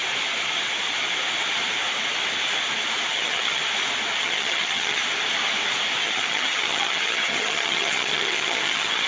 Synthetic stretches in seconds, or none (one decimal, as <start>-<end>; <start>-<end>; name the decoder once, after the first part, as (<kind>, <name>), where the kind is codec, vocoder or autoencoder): 3.1-3.6 (vocoder, HiFi-GAN); 4.2-5.0; 6.0-9.1